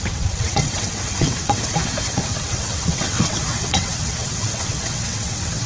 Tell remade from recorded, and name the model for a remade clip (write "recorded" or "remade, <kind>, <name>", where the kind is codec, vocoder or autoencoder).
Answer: remade, vocoder, WaveNeXt